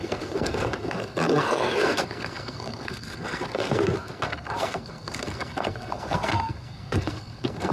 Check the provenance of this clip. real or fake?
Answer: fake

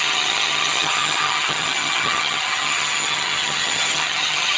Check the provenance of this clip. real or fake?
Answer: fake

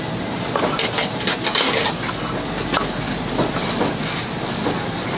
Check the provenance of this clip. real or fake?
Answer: real